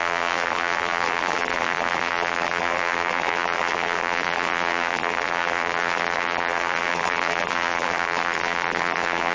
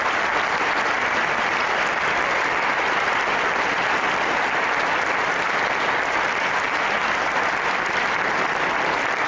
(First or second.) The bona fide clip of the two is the second